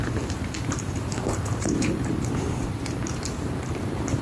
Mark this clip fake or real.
fake